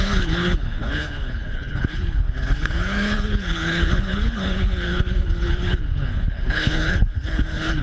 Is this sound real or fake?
fake